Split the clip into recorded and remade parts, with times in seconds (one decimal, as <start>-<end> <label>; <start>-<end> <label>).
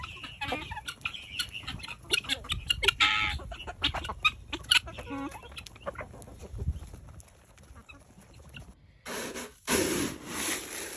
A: 0.0-11.0 recorded